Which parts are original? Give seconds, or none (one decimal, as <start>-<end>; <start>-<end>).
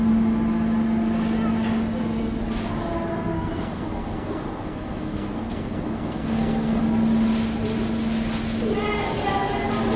0.0-3.1; 6.8-10.0